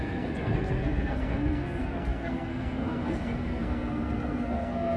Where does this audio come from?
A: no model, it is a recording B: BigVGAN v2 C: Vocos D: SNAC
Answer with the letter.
D